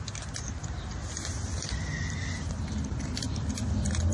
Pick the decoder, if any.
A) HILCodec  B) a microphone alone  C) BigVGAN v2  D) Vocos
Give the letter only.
C